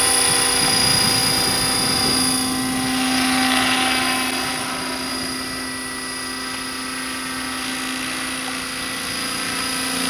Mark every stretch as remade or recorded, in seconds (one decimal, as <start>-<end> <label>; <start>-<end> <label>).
0.0-10.1 recorded